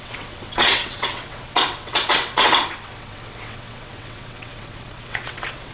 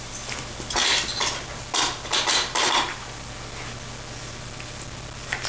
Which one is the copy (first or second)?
first